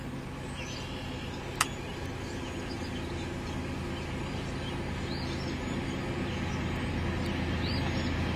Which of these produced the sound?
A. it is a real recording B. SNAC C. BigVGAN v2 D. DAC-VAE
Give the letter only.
A